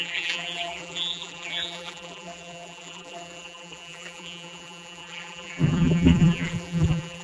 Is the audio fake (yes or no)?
yes